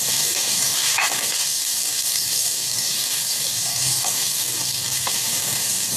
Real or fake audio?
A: fake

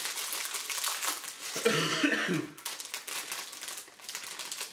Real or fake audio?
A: real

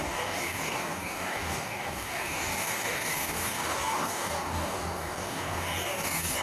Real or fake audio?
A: fake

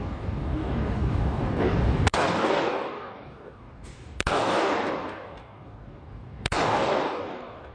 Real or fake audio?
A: fake